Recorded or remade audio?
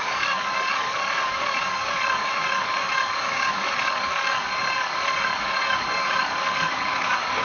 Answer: remade